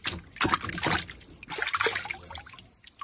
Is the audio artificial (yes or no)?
no